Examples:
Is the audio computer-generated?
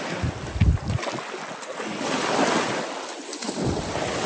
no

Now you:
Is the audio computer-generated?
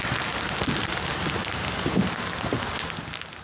no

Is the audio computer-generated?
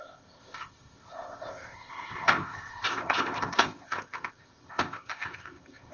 yes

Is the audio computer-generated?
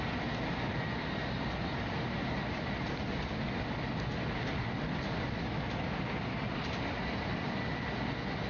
no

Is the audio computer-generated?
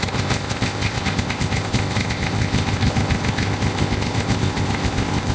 yes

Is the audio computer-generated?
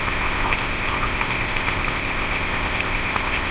yes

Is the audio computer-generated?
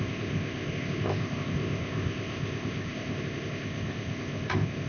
yes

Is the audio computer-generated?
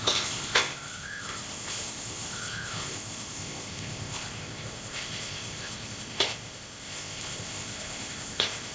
yes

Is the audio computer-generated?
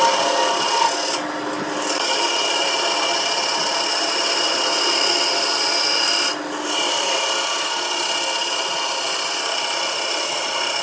no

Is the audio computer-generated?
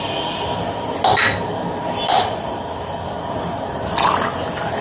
no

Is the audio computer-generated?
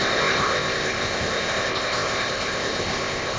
yes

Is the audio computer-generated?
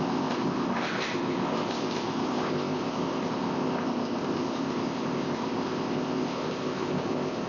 yes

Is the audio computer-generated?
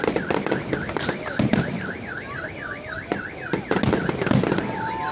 no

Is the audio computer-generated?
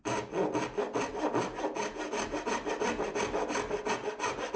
no